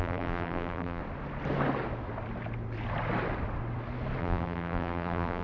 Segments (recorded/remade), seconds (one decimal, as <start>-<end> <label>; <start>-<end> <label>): 0.0-1.0 remade; 1.0-4.2 recorded; 4.2-5.4 remade